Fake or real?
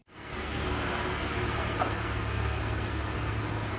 fake